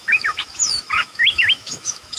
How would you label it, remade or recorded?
remade